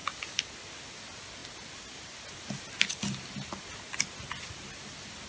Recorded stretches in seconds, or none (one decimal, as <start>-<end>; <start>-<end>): 0.0-5.3